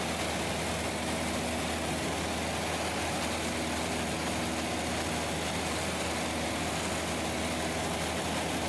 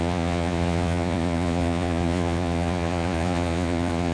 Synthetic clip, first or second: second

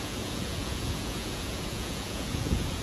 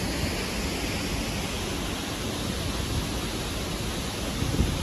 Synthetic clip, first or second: first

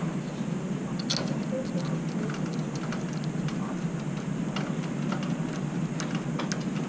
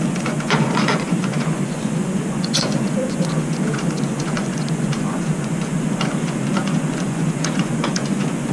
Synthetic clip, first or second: second